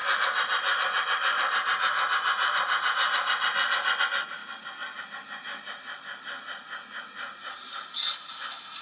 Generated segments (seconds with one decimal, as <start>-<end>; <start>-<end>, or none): none